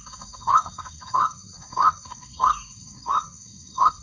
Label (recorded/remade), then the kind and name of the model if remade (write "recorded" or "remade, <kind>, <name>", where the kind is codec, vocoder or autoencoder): remade, codec, SNAC